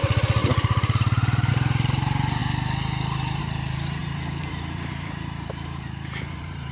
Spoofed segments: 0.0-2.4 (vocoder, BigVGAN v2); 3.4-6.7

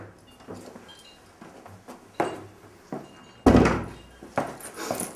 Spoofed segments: none

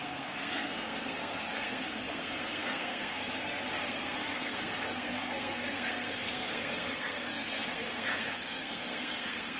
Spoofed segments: 0.0-3.2 (codec, SNAC); 3.8-9.6

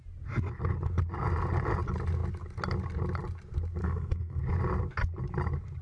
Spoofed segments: 3.8-4.4 (codec, SNAC)

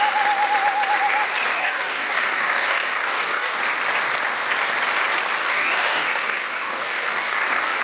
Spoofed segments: 1.5-3.6 (codec, DAC); 5.4-7.8